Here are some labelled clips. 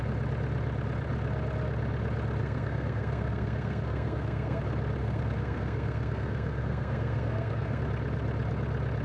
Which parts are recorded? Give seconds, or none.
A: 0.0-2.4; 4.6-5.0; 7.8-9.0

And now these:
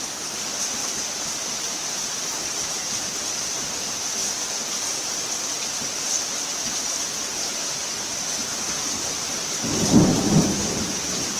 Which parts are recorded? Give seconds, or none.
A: 0.0-11.4